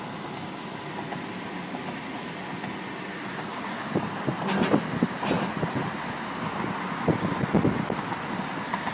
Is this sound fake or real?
real